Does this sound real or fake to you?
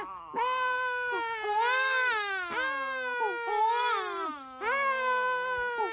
real